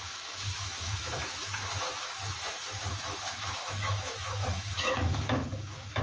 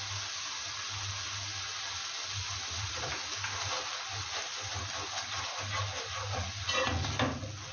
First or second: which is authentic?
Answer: second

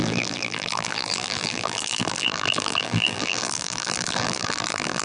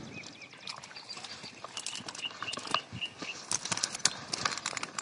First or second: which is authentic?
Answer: second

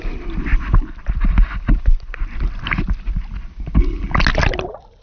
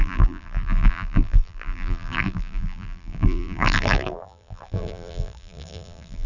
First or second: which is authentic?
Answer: first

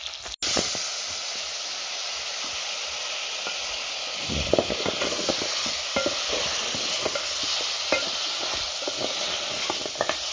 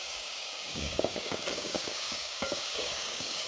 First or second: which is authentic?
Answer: first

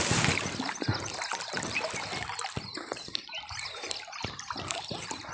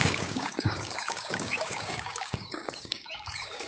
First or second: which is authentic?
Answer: first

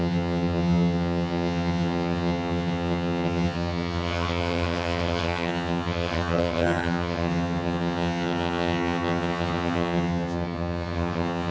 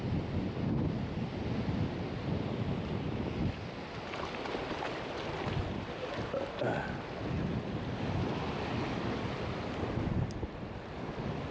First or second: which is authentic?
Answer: second